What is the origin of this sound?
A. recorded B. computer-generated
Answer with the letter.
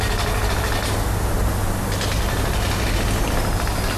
A